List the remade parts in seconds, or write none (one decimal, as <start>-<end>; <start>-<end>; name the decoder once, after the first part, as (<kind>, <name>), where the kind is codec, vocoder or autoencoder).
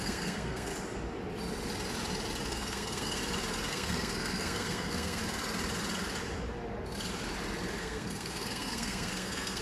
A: 0.0-0.7 (codec, SNAC); 2.5-3.2; 3.7-5.2; 7.8-9.6